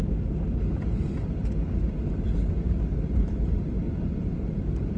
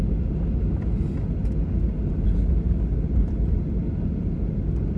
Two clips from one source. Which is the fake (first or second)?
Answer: first